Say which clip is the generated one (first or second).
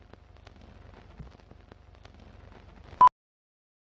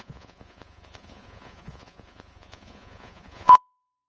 second